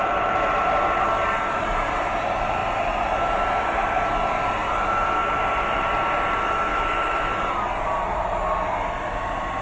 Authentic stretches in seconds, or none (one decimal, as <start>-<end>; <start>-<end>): 0.0-6.7; 7.4-9.6